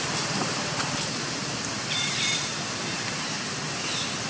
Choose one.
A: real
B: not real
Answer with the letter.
A